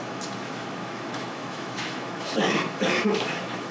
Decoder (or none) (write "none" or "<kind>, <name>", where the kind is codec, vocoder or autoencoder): autoencoder, DAC-VAE